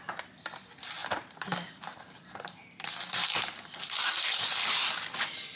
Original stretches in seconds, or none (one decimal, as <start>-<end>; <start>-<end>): 0.0-1.0; 3.3-5.6